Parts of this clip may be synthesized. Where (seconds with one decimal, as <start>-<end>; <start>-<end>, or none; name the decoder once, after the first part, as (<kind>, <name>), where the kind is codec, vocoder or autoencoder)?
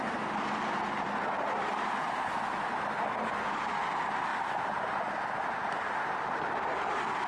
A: none